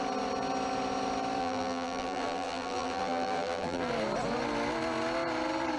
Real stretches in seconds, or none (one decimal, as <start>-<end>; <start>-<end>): 0.0-1.4; 3.9-5.8